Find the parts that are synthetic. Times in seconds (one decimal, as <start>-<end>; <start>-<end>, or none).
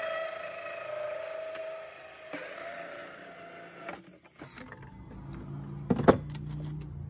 none